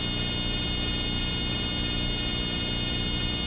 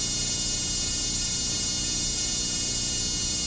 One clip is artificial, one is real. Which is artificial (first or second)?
second